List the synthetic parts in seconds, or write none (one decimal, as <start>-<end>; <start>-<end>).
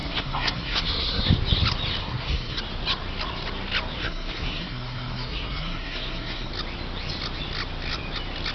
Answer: 0.0-1.3; 2.0-2.6; 4.0-6.5